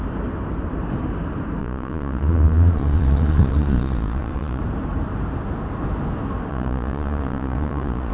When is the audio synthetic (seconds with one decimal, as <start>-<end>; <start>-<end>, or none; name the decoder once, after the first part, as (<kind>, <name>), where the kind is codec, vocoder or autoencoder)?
1.6-4.6 (vocoder, Vocos); 6.5-8.1